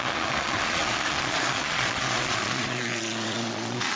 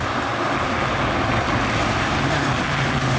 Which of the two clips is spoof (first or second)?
first